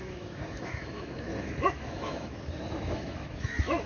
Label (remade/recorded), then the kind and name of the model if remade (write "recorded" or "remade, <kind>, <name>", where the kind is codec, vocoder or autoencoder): remade, autoencoder, DAC-VAE